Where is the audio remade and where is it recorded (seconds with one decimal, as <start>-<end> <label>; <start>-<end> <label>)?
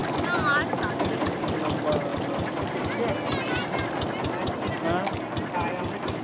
0.0-6.2 recorded